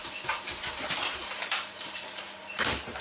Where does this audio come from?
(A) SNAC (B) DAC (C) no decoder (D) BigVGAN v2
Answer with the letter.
D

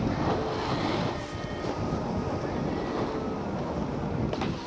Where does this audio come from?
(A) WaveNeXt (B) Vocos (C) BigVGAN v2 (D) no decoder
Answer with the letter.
D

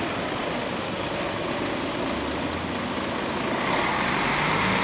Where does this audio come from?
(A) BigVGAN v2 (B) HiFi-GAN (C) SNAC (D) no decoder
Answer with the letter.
D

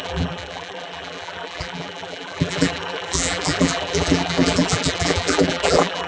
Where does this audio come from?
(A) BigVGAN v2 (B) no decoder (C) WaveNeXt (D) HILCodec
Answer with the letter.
A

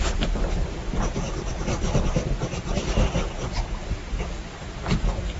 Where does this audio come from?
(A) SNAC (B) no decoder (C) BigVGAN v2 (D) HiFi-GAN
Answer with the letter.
C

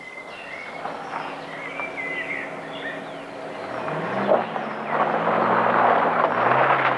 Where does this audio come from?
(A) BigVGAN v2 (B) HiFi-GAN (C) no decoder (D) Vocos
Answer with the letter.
C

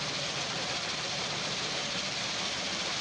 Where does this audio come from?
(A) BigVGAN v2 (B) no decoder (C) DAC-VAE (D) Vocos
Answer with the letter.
A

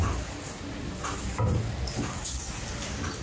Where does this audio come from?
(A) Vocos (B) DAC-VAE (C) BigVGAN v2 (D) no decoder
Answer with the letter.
D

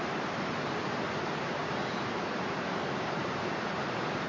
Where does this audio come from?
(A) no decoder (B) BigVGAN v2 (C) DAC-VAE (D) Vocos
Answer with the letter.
B